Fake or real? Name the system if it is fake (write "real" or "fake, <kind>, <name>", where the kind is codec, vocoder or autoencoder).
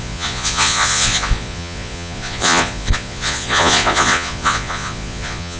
fake, vocoder, Vocos